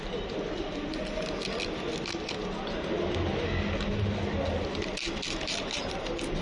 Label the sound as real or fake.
real